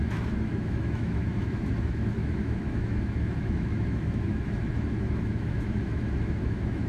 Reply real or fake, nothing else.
fake